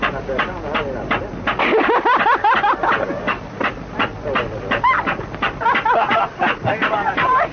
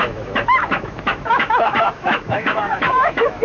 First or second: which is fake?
second